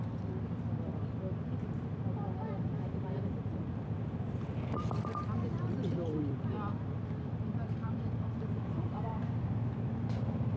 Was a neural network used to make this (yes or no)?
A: yes